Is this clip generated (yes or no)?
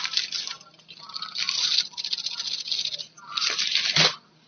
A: no